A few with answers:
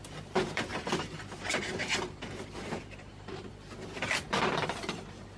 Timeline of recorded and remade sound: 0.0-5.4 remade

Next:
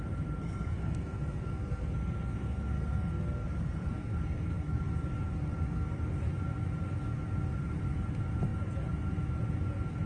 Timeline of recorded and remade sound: 0.0-0.4 recorded; 0.4-4.9 remade; 4.9-10.1 recorded

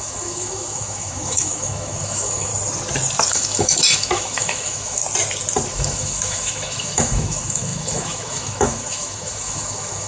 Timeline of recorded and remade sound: 0.0-2.5 remade; 2.5-3.3 recorded; 3.3-5.0 remade; 5.0-5.7 recorded; 5.7-10.1 remade

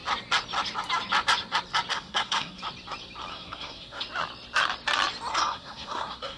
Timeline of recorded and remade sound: 0.0-1.9 recorded; 1.9-2.6 remade; 2.6-3.3 recorded; 3.3-4.0 remade; 4.0-5.3 recorded; 5.3-6.4 remade

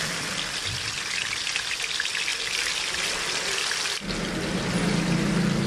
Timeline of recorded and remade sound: 0.0-5.7 recorded

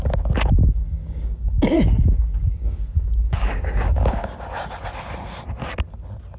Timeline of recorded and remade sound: 0.0-0.8 recorded; 0.8-4.4 remade; 4.4-6.4 recorded

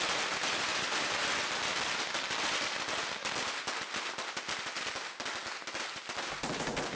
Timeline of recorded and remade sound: 0.0-7.0 recorded